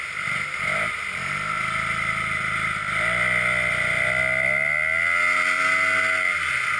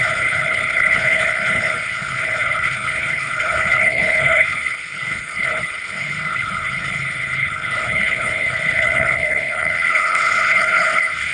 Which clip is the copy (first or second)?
second